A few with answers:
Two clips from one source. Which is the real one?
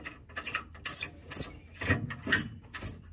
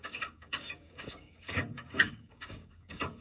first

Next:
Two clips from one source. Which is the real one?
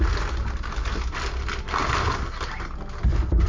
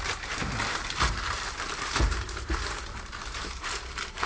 first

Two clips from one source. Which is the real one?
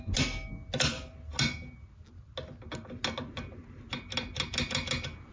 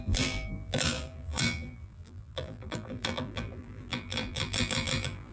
first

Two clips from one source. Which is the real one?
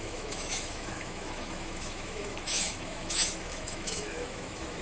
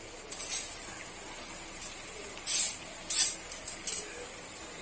second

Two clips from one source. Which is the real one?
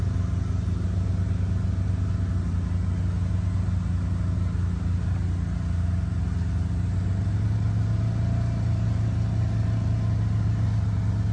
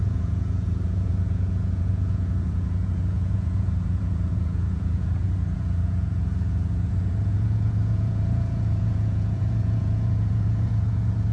first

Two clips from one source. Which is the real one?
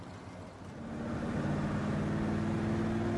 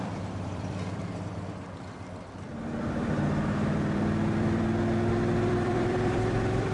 first